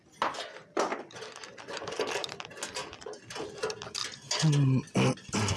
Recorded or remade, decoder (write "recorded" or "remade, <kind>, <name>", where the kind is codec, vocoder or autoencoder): recorded